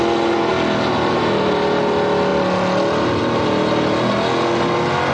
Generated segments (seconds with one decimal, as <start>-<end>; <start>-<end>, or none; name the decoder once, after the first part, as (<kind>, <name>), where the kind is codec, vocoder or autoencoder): none